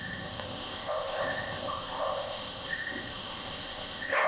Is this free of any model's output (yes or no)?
no